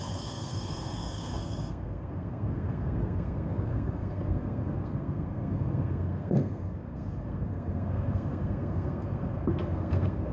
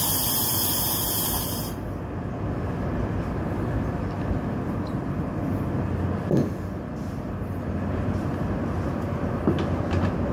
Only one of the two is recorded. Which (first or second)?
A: second